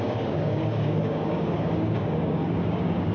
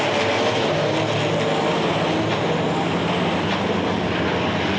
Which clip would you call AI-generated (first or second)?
first